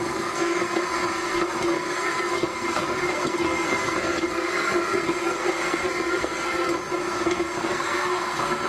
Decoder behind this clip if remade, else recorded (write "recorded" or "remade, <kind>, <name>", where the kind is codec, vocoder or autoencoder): remade, codec, SNAC